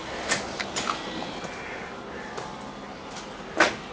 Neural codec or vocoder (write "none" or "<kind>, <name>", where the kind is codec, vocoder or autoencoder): none